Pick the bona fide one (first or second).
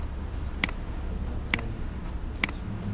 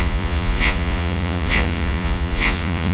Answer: first